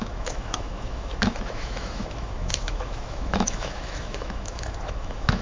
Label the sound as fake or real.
fake